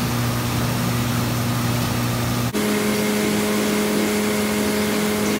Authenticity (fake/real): real